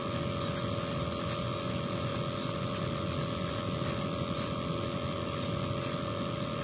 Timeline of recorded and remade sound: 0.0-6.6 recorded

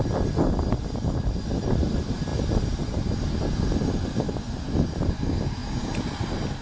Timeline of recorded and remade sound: 0.0-2.3 remade; 2.3-4.7 recorded; 4.7-5.6 remade; 5.6-6.6 recorded

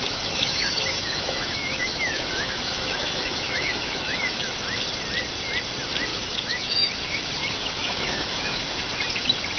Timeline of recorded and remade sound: 0.0-4.5 remade; 4.5-6.1 recorded; 6.1-6.9 remade; 6.9-7.4 recorded; 7.4-8.6 remade; 8.6-9.6 recorded

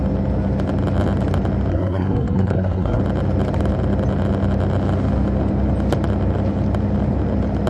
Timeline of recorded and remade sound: 0.0-1.7 recorded; 1.7-3.0 remade; 3.0-7.7 recorded

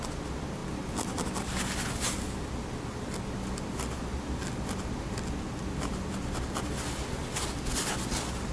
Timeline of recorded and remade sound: 0.0-8.5 recorded

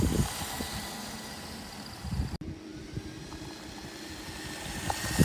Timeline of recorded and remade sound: 0.0-5.2 recorded

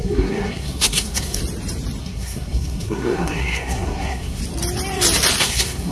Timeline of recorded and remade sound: 0.0-1.4 remade; 1.4-2.0 recorded; 2.0-4.4 remade; 4.4-5.4 recorded; 5.4-5.9 remade

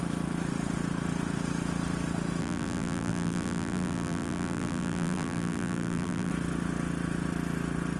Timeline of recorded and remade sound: 0.0-2.4 recorded; 2.4-6.3 remade; 6.3-8.0 recorded